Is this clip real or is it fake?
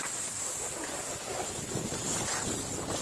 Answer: real